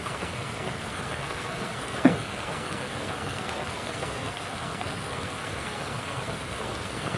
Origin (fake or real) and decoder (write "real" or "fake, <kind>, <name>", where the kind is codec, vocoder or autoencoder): fake, codec, SNAC